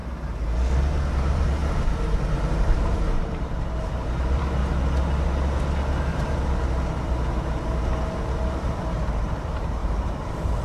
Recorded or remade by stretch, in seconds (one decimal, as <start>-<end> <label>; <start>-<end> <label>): 0.0-1.1 recorded; 1.1-1.6 remade; 1.6-2.5 recorded; 2.5-4.6 remade; 4.6-8.5 recorded; 8.5-10.6 remade